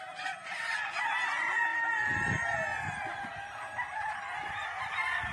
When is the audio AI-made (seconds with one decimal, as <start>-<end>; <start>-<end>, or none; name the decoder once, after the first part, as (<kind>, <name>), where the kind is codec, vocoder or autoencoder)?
0.4-1.0 (vocoder, BigVGAN v2); 1.7-2.3